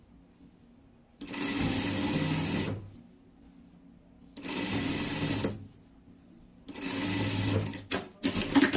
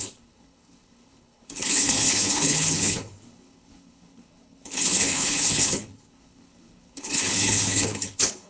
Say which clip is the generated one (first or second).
second